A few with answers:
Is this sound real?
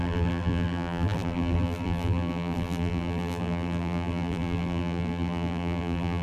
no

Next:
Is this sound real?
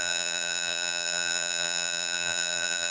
no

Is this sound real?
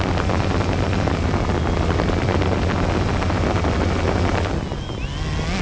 yes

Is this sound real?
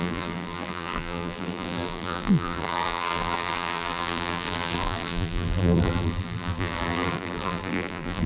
no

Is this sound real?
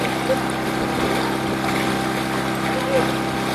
yes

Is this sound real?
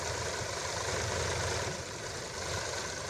yes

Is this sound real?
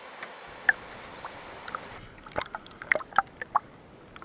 yes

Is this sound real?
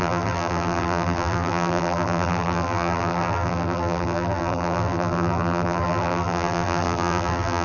no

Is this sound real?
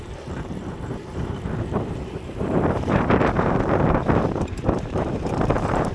no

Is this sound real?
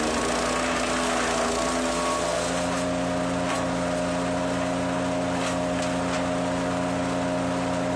yes